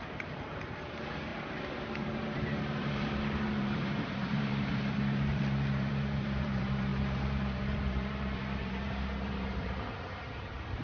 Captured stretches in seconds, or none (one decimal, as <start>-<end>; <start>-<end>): none